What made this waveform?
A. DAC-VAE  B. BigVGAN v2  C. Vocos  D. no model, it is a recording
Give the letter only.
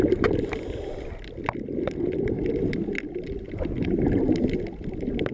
D